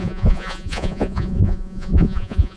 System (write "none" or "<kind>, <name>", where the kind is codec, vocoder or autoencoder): vocoder, Vocos